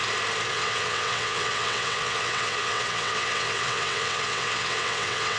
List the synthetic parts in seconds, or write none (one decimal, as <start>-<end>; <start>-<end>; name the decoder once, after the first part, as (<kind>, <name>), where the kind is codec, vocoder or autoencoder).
0.5-5.4 (vocoder, WaveNeXt)